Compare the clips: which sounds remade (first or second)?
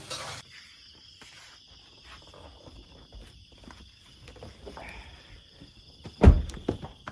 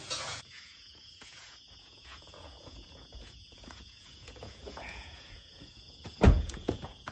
second